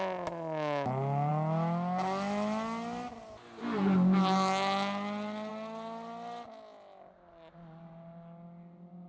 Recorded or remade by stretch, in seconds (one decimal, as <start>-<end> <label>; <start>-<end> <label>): 0.0-9.1 recorded